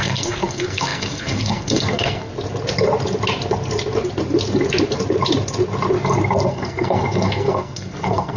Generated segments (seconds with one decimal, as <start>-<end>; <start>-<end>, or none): 0.0-2.3; 6.5-8.4